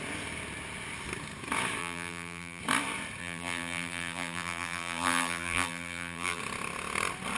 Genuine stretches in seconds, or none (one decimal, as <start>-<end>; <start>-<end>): 0.0-1.8; 2.6-3.2; 6.4-7.4